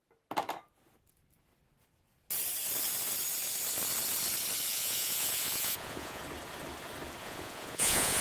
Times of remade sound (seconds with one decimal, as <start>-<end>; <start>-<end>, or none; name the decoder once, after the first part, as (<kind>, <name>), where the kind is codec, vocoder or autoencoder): 4.7-6.2 (vocoder, Vocos); 7.2-8.2